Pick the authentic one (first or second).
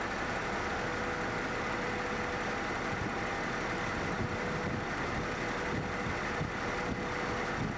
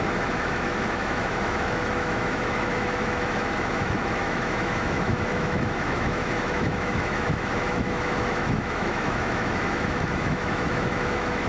first